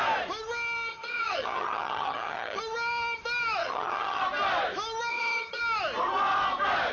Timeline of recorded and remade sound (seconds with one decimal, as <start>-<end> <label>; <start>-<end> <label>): 0.0-0.9 recorded; 0.9-2.6 remade; 2.6-3.6 recorded; 3.6-4.2 remade; 4.2-5.1 recorded; 5.1-5.6 remade; 5.6-6.9 recorded